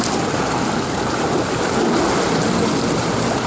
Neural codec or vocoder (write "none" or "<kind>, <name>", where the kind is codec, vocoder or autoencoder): none